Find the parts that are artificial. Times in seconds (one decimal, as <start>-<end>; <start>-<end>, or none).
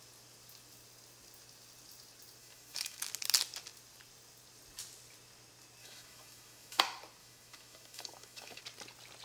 2.4-3.0; 5.8-6.8; 7.2-8.6